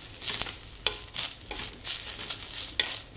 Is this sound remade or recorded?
recorded